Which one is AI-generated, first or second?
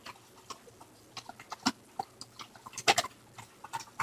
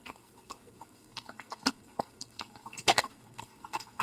second